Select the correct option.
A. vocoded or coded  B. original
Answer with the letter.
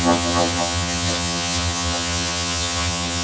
A